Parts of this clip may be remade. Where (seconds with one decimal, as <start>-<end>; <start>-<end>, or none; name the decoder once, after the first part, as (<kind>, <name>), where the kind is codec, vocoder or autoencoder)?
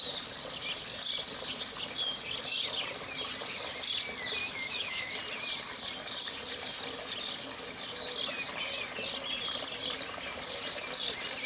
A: 4.4-5.1 (autoencoder, DAC-VAE)